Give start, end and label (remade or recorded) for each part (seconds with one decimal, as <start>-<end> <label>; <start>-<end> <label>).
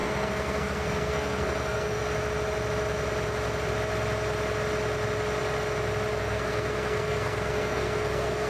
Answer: 0.0-2.0 remade; 2.0-6.2 recorded; 6.2-8.5 remade